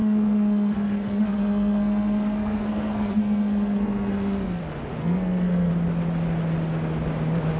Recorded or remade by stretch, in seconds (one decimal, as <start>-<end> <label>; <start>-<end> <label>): 0.0-4.6 remade; 4.6-5.0 recorded; 5.0-5.7 remade; 5.7-7.6 recorded